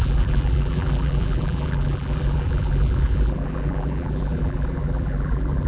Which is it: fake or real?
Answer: fake